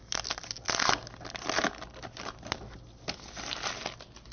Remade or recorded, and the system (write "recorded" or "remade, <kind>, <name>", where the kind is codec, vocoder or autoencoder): recorded